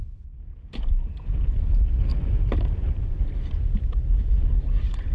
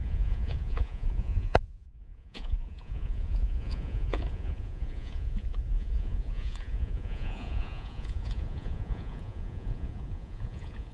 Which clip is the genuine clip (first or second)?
first